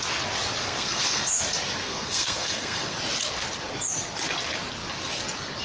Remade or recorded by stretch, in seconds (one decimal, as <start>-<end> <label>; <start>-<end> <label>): 0.0-0.6 recorded; 0.6-1.4 remade; 1.4-1.8 recorded; 1.8-3.0 remade; 3.0-5.6 recorded